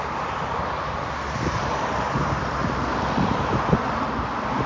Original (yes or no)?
yes